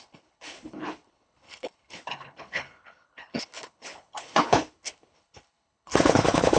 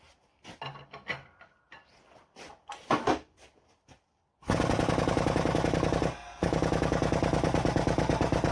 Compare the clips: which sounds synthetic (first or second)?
first